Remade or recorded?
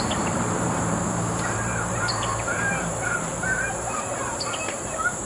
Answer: remade